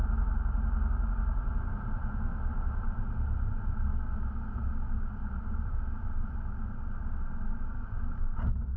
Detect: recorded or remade recorded